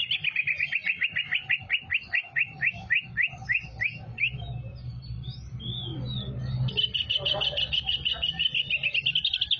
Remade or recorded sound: recorded